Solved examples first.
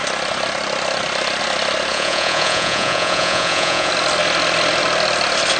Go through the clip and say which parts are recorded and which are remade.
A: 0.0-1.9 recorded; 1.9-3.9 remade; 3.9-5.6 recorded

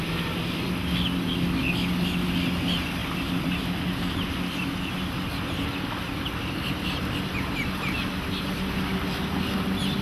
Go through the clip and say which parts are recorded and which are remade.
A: 0.0-10.0 recorded

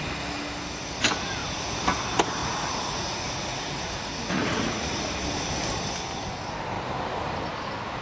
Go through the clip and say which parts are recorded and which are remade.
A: 0.0-1.4 recorded; 1.4-2.0 remade; 2.0-2.4 recorded; 2.4-5.0 remade; 5.0-8.0 recorded

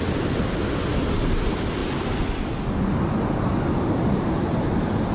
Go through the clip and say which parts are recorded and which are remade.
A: 0.0-5.1 recorded